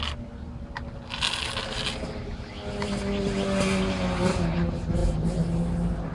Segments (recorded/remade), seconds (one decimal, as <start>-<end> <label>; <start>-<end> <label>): 0.0-6.1 recorded